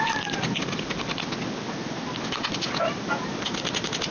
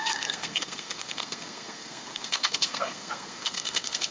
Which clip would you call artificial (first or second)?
second